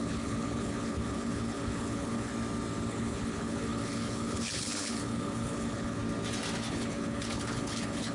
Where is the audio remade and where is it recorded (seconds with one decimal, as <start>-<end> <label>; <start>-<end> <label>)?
0.0-2.3 remade; 2.3-2.9 recorded; 2.9-6.0 remade; 6.0-6.7 recorded; 6.7-8.1 remade